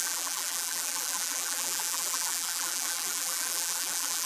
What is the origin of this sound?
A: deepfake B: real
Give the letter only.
A